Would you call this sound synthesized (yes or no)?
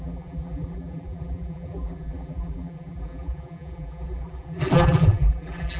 yes